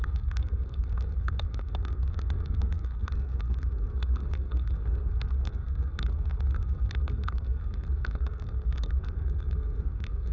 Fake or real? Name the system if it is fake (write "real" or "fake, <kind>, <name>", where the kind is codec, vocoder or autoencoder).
fake, codec, SNAC